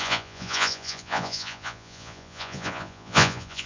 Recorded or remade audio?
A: remade